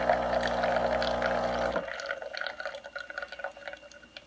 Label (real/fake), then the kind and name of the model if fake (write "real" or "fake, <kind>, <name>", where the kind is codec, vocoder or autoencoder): real